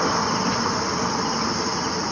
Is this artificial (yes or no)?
no